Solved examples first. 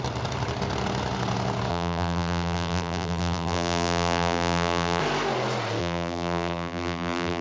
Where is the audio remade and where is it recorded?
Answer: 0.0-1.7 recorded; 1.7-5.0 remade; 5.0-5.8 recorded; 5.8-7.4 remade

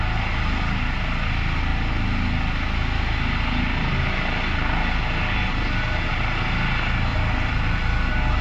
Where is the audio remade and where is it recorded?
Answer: 0.0-7.1 recorded; 7.1-8.4 remade

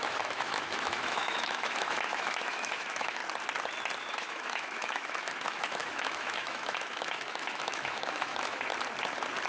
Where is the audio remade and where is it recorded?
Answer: 0.0-3.2 remade; 3.2-4.0 recorded; 4.0-8.7 remade; 8.7-9.5 recorded

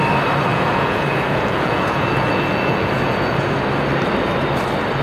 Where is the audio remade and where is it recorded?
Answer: 0.0-0.5 recorded; 0.5-3.5 remade; 3.5-5.0 recorded

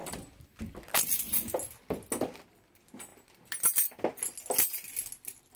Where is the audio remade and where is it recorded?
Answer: 0.0-5.6 recorded